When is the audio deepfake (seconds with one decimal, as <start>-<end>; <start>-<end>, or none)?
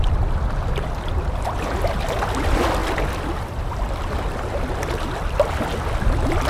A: 2.8-4.4